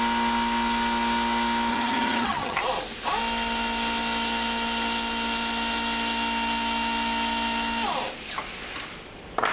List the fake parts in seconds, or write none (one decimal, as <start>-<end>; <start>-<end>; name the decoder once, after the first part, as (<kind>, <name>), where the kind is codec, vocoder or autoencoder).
1.7-2.6 (vocoder, HiFi-GAN)